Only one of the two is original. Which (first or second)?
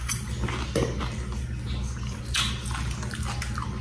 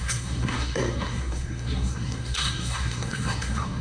first